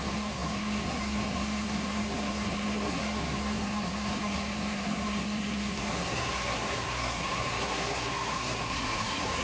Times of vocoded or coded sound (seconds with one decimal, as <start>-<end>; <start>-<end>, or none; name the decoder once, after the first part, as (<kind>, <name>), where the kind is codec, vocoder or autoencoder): 0.0-9.4 (codec, SNAC)